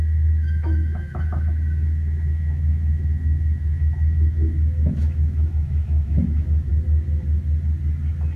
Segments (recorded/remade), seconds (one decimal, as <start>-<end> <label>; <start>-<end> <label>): 0.0-6.7 remade; 6.7-8.4 recorded